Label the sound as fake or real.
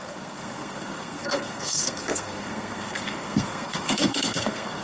fake